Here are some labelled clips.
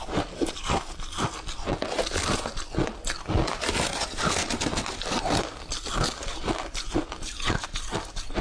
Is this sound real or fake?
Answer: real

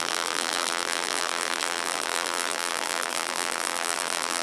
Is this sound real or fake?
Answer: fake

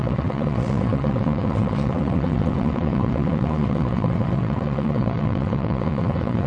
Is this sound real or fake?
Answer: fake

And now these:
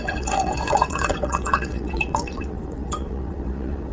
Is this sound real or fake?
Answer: fake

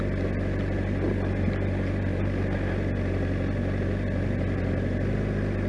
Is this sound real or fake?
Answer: real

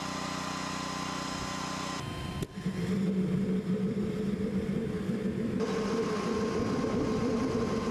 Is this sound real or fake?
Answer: real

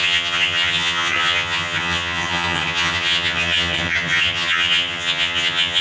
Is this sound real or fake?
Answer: fake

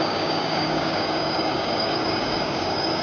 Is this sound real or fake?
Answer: fake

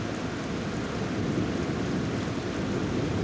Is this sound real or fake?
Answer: real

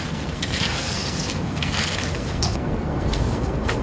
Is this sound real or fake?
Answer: fake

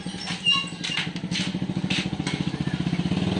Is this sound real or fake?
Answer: real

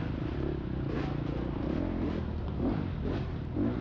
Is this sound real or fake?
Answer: real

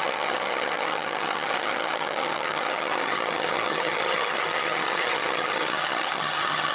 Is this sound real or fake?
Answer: fake